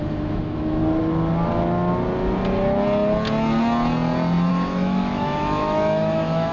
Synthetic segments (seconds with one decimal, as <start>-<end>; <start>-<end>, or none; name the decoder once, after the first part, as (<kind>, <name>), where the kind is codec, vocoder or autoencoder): 0.0-0.8 (autoencoder, DAC-VAE); 4.5-6.5